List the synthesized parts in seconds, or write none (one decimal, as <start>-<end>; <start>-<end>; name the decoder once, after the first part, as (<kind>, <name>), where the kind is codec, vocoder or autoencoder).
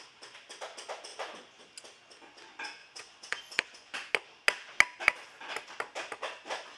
1.1-1.6 (vocoder, Vocos); 2.8-4.1